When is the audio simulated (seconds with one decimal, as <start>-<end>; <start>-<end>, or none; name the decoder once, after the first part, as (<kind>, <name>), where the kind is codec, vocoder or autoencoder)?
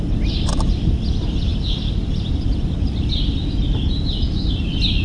none